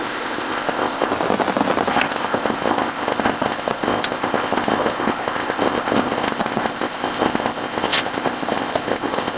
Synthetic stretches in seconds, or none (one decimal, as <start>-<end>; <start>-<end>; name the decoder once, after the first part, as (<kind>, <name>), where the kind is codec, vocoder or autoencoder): 0.0-1.1 (codec, ZipCodec); 1.9-9.4